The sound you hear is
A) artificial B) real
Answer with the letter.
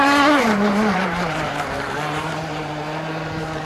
A